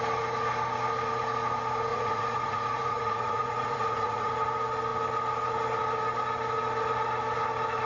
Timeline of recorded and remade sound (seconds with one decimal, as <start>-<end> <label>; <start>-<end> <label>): 0.0-1.9 recorded; 1.9-4.3 remade; 4.3-7.9 recorded